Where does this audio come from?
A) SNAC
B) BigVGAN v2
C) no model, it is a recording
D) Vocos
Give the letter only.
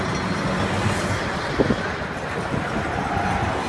C